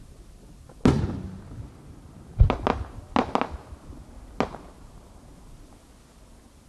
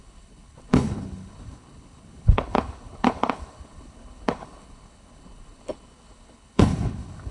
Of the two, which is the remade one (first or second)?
second